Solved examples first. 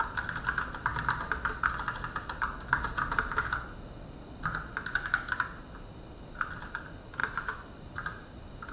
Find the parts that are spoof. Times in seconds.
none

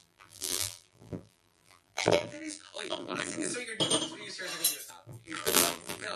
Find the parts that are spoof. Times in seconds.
0.0-3.5 (vocoder, BigVGAN v2); 4.9-6.2

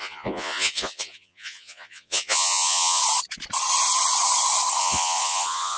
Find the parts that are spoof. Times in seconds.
0.0-3.0 (vocoder, Vocos); 4.8-5.8